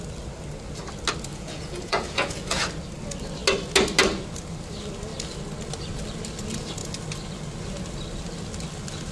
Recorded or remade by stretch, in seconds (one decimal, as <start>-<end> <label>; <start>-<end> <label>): 0.0-1.3 recorded; 1.3-2.7 remade; 2.7-9.1 recorded